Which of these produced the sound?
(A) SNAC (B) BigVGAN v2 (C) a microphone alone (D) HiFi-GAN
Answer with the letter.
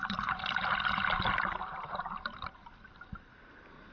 B